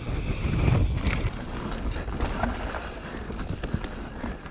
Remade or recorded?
recorded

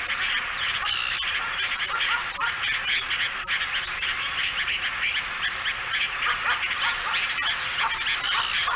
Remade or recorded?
recorded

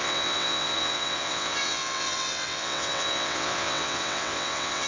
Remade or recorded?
remade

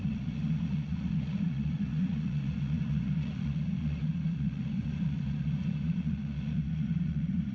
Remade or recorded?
remade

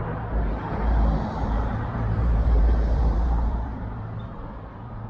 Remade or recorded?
remade